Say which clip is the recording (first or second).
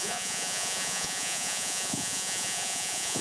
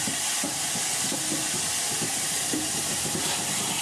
second